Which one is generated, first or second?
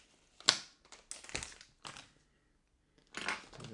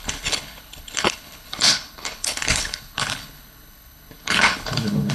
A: second